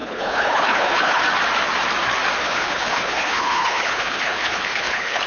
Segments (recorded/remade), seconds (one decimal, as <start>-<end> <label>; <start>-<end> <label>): 0.0-1.2 remade; 1.2-2.4 recorded; 2.4-5.3 remade